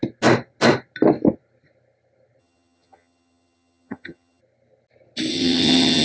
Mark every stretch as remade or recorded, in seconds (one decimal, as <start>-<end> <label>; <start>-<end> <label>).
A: 0.0-2.4 recorded; 2.4-4.4 remade; 4.4-5.3 recorded; 5.3-6.0 remade